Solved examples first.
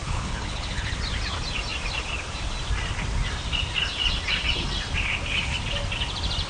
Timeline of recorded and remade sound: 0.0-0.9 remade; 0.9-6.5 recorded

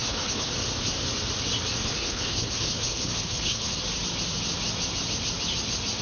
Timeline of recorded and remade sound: 0.0-0.5 remade; 0.5-1.8 recorded; 1.8-3.8 remade; 3.8-6.0 recorded